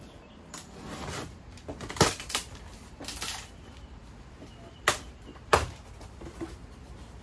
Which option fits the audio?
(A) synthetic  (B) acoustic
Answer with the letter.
B